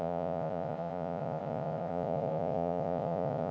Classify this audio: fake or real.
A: fake